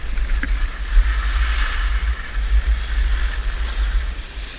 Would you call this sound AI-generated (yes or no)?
no